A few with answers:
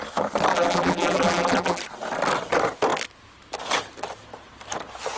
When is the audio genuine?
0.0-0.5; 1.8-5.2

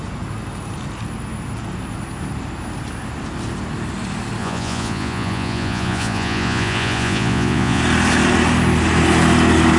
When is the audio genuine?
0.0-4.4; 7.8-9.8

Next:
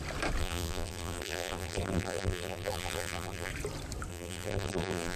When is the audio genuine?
0.0-0.4; 3.5-4.1

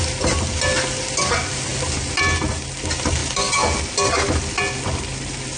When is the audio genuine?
0.0-5.6

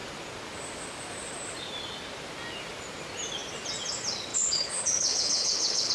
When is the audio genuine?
0.0-4.3